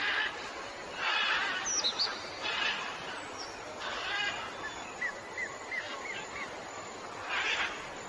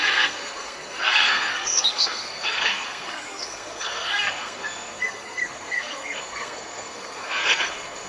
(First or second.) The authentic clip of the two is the first